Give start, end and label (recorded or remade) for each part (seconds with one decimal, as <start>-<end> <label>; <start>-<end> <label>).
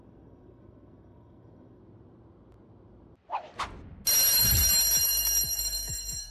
0.0-1.8 remade; 1.8-5.6 recorded; 5.6-6.3 remade